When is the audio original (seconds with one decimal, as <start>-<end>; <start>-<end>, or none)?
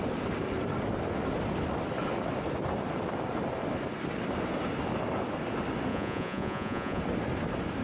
0.0-5.9; 7.0-7.8